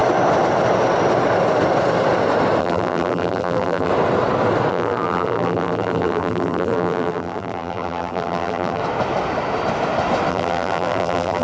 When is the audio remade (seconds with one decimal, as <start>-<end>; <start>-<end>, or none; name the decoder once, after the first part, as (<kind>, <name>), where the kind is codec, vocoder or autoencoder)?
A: 2.6-3.9 (vocoder, BigVGAN v2); 4.7-8.8; 10.3-11.4